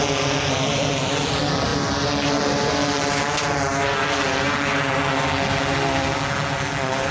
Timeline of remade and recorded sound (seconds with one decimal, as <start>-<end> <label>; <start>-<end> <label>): 0.0-7.1 recorded